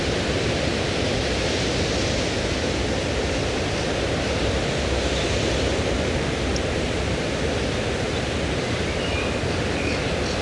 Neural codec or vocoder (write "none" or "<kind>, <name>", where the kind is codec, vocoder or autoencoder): none